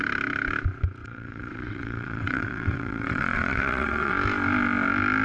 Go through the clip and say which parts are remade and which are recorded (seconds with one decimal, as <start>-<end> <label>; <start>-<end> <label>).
0.0-1.0 recorded; 1.0-4.1 remade; 4.1-5.2 recorded